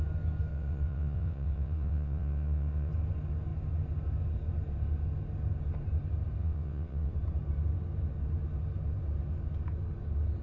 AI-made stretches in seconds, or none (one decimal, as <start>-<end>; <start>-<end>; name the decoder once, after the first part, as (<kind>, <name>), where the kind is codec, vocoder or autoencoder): 0.5-2.9 (vocoder, WaveNeXt); 6.4-7.1